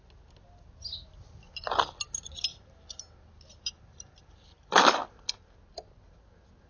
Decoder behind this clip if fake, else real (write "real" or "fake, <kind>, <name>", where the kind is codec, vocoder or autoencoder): real